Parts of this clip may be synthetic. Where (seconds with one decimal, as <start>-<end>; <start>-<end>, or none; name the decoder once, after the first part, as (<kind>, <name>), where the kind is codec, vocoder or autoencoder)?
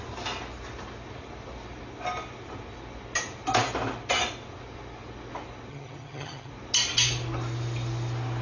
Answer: 5.7-6.5 (vocoder, HiFi-GAN)